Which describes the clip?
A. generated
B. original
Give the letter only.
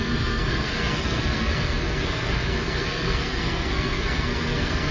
A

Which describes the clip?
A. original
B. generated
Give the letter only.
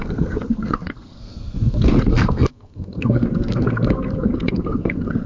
B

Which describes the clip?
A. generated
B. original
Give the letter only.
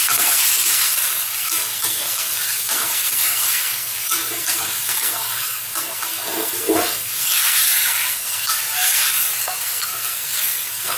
A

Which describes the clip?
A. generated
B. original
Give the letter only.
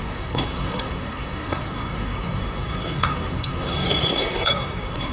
A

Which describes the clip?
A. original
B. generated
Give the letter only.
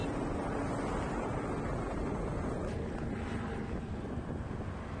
A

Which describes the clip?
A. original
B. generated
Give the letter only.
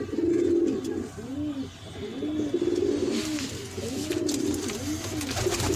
A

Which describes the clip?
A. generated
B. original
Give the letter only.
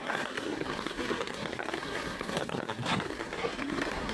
A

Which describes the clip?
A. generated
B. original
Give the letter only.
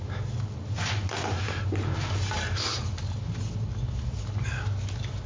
B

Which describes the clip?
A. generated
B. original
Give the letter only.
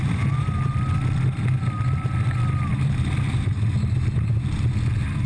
B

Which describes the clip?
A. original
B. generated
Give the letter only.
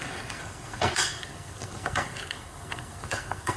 B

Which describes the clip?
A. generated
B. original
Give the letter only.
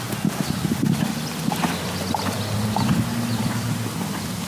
B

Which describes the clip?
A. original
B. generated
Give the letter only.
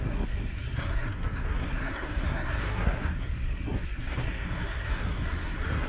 B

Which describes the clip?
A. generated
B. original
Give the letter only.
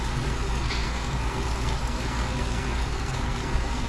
A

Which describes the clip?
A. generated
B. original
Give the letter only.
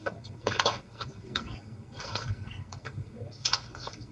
A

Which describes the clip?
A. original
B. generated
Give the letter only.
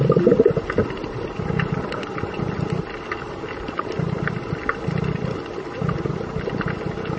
A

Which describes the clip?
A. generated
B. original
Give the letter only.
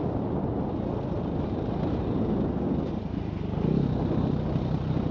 B